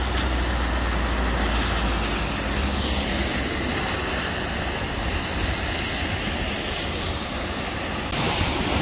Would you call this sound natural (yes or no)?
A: yes